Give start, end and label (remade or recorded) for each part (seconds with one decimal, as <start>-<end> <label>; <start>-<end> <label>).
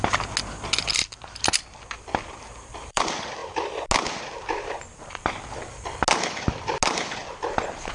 0.0-1.0 recorded; 1.0-3.0 remade; 3.0-7.9 recorded